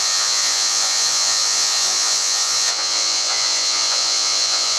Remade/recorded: remade